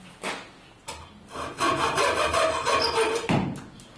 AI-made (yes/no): no